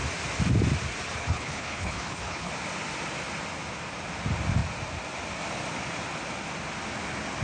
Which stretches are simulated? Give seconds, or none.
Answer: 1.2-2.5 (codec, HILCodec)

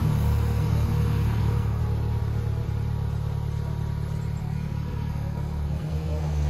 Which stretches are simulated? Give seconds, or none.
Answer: 0.0-1.8 (codec, SNAC); 4.4-6.5

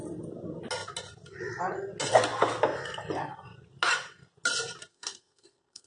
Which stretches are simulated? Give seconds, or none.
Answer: 4.9-5.9 (codec, SNAC)

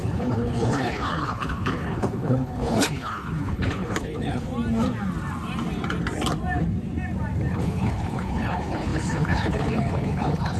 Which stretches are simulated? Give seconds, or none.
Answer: 0.0-4.5 (codec, HILCodec); 7.5-10.6